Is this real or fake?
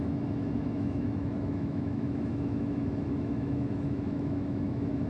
fake